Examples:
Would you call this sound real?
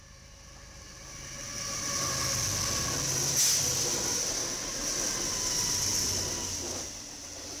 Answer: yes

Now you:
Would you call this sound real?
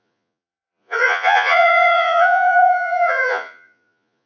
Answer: no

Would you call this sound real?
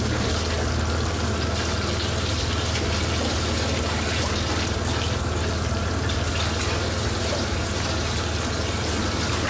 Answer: yes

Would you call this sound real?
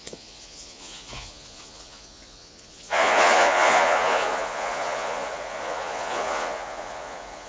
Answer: no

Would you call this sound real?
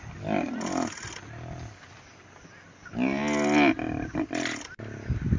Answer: yes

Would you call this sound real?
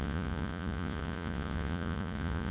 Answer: no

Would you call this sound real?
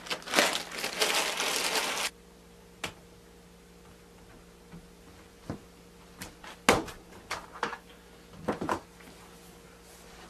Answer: yes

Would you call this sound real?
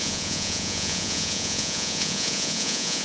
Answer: no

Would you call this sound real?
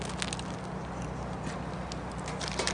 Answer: yes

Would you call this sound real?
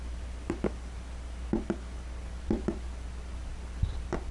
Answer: yes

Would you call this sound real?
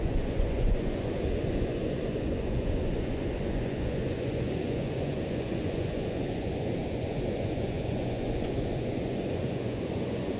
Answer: no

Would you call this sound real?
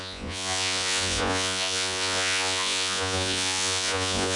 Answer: no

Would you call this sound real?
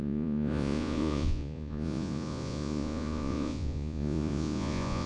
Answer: no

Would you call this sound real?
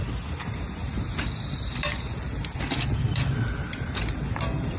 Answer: yes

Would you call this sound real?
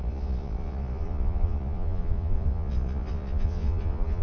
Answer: no